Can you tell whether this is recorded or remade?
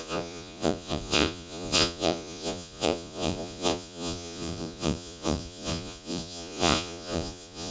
remade